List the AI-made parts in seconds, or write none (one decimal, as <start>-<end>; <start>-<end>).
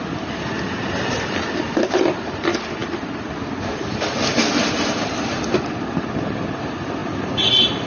0.0-7.9